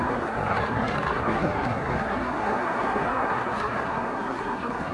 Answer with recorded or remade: remade